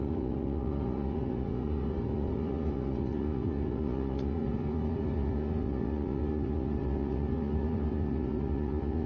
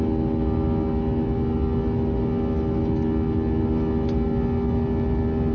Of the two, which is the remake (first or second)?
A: first